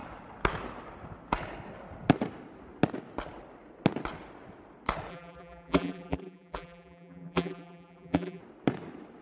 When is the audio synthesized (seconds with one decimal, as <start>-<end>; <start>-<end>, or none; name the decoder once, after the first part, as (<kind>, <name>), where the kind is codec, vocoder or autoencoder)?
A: 5.1-8.4 (vocoder, BigVGAN v2)